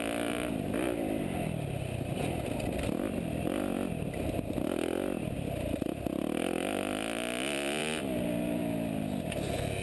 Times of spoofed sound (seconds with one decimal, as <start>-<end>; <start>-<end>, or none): none